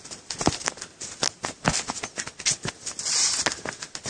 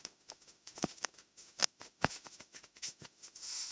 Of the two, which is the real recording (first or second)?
first